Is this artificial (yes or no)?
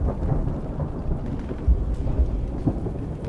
no